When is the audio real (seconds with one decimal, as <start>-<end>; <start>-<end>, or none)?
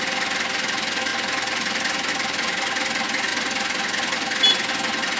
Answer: 0.0-5.2